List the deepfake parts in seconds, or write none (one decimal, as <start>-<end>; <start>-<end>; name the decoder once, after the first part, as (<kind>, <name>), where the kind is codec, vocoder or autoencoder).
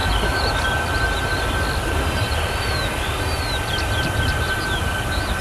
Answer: none